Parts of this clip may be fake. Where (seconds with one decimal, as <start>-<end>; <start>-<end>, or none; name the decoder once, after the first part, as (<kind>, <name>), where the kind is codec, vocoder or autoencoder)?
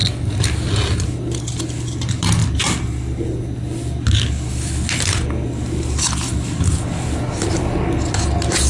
none